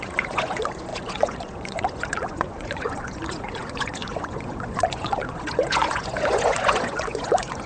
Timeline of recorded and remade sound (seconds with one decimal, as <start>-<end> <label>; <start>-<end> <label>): 0.0-7.7 remade